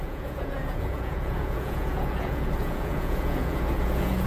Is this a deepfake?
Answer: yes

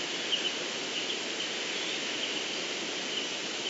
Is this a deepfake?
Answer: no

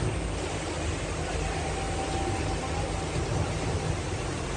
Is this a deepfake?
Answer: no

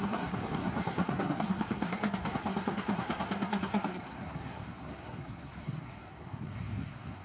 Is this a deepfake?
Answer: yes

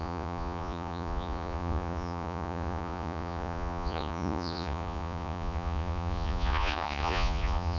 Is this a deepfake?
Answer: yes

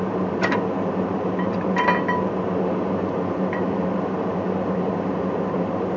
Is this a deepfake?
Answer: no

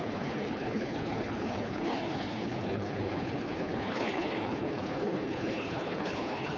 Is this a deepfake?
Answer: yes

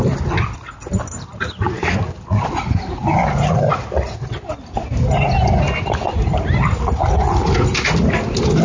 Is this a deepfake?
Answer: no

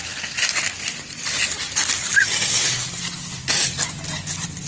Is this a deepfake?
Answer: no